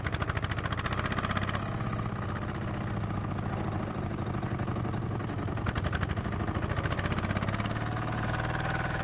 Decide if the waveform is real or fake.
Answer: real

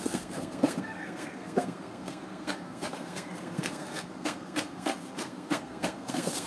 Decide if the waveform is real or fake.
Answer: fake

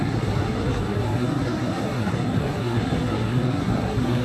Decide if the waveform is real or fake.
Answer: fake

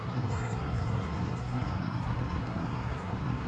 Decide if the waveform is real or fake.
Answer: fake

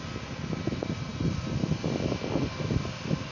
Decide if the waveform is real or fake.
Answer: real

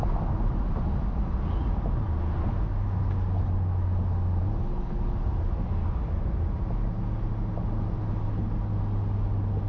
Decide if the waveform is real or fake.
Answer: real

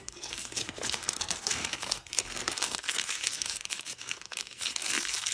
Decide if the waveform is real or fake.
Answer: fake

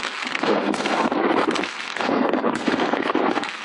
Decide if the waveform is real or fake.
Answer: fake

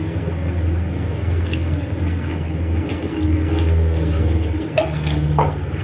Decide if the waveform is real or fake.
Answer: fake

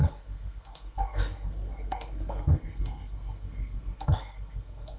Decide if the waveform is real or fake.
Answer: fake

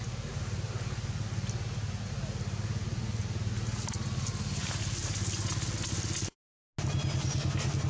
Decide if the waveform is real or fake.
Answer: real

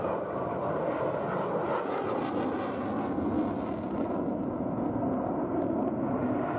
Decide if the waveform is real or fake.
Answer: real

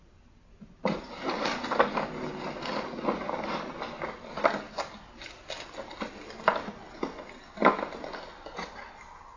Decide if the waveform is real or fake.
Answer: real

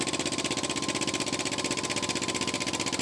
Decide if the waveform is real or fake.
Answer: real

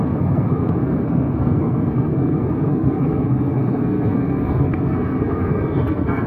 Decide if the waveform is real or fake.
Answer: fake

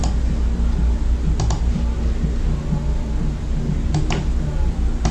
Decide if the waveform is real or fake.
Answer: real